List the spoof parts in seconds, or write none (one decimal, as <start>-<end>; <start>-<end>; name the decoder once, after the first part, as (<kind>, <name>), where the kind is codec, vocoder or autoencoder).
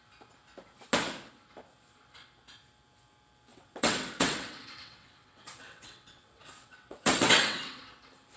3.5-7.8 (vocoder, WaveNeXt)